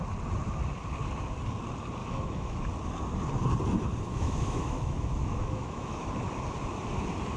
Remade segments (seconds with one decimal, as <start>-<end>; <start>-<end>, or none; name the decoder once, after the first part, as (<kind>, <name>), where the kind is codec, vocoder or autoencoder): 2.0-2.7 (autoencoder, DAC-VAE); 4.1-6.1